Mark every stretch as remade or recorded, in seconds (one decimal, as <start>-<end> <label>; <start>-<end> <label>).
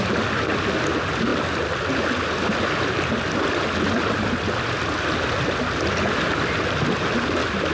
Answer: 0.0-7.7 recorded